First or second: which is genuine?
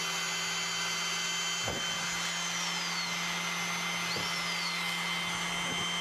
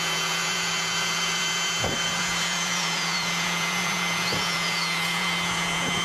first